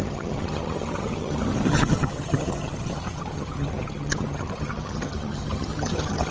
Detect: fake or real fake